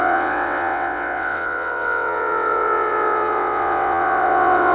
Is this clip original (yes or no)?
no